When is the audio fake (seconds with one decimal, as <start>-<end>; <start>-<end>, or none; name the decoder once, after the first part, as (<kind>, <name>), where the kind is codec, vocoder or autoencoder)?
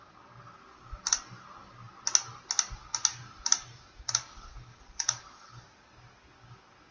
0.7-1.2 (vocoder, BigVGAN v2); 3.1-4.1; 4.7-5.8